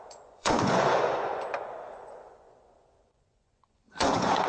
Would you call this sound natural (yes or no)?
no